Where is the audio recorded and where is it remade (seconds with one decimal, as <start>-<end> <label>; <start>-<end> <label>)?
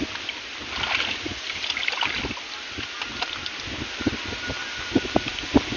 0.0-5.8 recorded